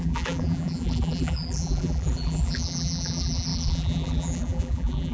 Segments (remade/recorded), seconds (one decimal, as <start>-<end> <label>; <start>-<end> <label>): 0.0-5.1 remade